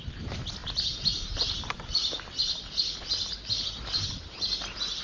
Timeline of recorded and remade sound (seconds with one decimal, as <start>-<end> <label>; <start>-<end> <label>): 0.0-5.0 recorded